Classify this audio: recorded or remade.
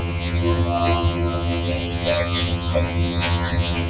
remade